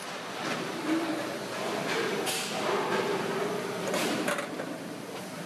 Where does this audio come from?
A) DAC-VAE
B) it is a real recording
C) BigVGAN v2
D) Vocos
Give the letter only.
C